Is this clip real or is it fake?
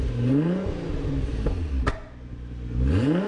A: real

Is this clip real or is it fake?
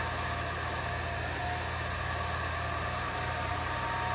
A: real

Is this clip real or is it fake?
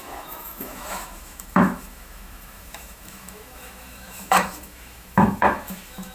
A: fake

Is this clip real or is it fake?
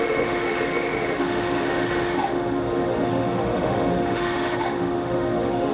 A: fake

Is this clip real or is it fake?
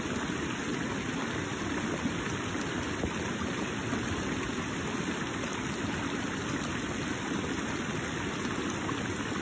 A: real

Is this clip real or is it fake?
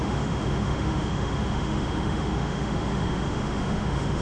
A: fake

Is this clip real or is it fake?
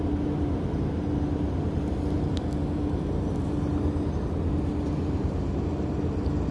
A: real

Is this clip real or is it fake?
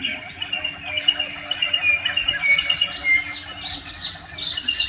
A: real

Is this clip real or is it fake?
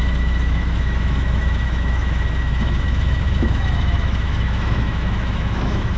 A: fake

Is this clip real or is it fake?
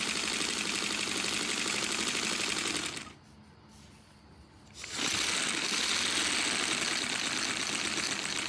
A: real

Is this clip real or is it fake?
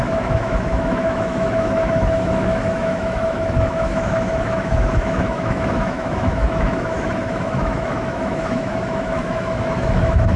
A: fake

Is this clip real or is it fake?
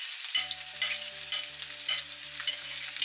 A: real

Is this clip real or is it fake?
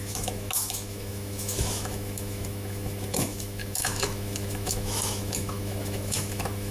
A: fake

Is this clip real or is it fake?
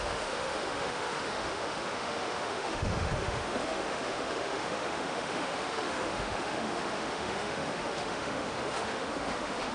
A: fake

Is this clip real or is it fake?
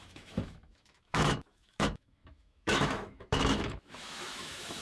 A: fake